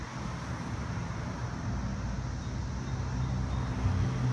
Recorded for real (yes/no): yes